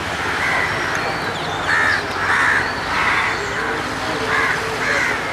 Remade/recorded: recorded